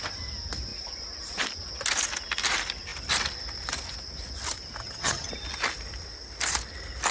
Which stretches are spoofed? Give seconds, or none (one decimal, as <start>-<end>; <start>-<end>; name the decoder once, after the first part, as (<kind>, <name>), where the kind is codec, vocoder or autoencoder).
4.8-5.3 (vocoder, HiFi-GAN)